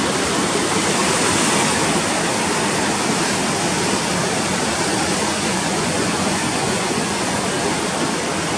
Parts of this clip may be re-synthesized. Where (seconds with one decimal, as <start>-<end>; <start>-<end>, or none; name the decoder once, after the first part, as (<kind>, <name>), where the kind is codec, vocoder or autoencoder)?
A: 5.3-7.4 (vocoder, Vocos)